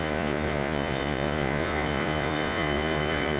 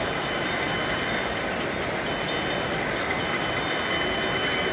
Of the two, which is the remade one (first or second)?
first